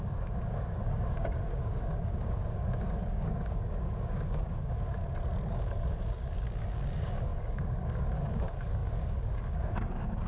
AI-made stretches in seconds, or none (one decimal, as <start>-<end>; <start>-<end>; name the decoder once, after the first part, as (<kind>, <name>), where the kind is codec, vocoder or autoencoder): 0.0-5.0 (codec, DAC); 5.5-10.3